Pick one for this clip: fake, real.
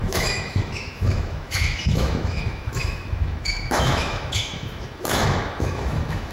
fake